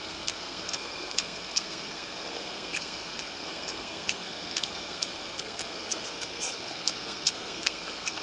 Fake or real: fake